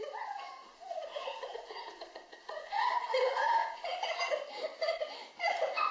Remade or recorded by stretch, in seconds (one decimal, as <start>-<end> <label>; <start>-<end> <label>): 0.0-0.6 recorded; 0.6-4.1 remade; 4.1-5.9 recorded